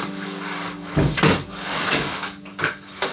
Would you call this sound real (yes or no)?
no